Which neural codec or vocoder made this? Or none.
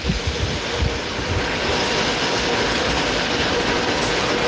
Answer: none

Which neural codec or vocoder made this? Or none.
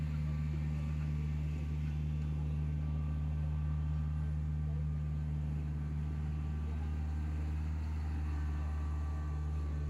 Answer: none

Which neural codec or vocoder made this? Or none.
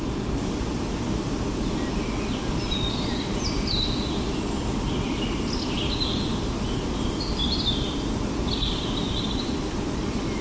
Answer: none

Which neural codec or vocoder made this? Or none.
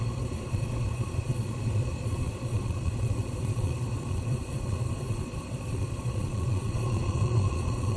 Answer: vocoder, Vocos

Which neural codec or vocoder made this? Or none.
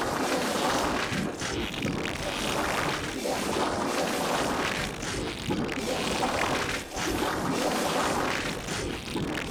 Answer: none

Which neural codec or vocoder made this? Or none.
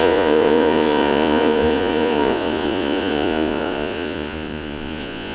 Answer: vocoder, Vocos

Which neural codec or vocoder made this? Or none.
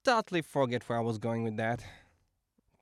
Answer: none